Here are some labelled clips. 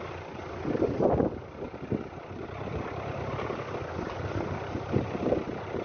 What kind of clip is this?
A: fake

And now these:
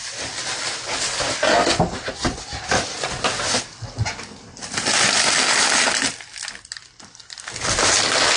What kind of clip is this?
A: real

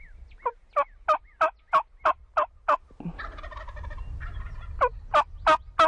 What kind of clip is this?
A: real